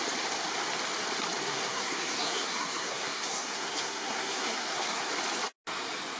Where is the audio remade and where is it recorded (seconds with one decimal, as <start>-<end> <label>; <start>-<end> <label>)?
0.0-1.4 recorded; 1.4-5.1 remade; 5.1-6.2 recorded